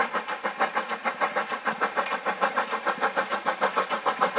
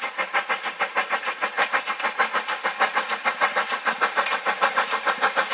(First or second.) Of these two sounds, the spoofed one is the first